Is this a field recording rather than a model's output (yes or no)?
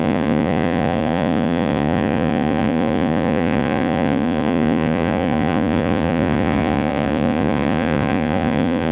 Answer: no